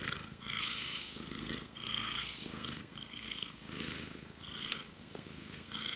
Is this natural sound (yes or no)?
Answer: no